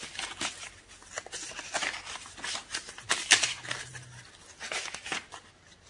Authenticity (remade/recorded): recorded